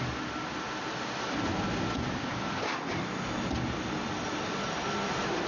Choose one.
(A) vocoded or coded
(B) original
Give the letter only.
B